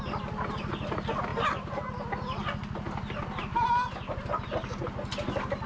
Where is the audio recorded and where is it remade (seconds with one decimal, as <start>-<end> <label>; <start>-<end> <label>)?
0.0-5.7 recorded